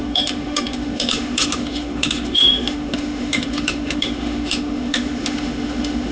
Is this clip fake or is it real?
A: fake